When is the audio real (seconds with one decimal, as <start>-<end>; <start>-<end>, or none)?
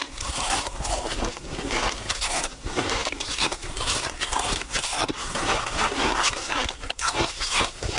none